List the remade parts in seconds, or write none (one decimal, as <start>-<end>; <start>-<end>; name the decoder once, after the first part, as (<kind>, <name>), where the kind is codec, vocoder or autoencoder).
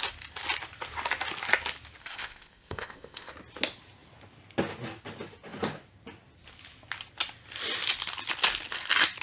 2.0-3.3 (codec, ZipCodec)